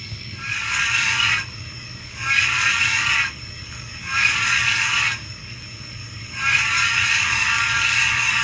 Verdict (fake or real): fake